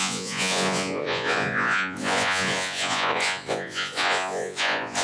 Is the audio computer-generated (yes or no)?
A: yes